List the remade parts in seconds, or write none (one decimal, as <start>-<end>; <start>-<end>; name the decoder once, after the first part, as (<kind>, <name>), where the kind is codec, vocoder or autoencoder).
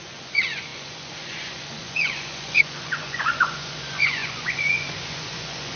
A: 0.0-5.8 (vocoder, Vocos)